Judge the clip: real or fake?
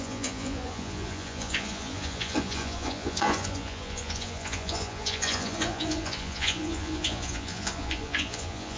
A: fake